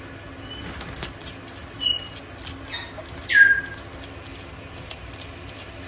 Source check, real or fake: real